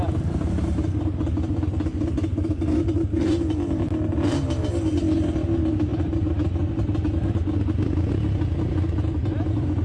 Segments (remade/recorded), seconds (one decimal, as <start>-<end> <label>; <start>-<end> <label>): 0.0-9.8 recorded